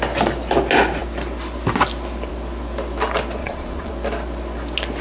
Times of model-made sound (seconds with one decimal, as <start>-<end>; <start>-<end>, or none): 3.4-3.9